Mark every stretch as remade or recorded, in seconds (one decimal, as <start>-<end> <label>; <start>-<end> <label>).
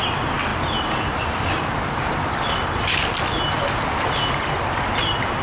0.0-5.4 recorded